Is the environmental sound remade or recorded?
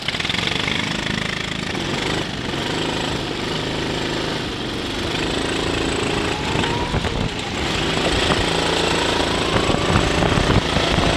recorded